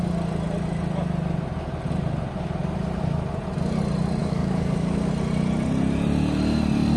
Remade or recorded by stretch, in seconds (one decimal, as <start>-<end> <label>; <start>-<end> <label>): 0.0-4.2 recorded; 4.2-5.1 remade; 5.1-7.0 recorded